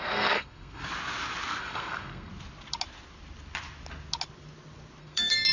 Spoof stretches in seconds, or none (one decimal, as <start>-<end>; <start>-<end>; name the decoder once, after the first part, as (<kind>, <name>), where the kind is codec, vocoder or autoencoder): 0.0-0.8 (codec, SNAC); 1.6-2.3; 5.0-5.5